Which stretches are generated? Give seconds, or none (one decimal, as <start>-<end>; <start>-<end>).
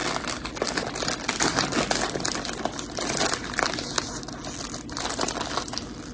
none